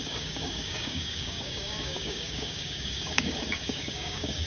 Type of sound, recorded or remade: remade